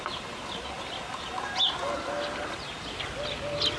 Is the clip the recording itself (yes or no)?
yes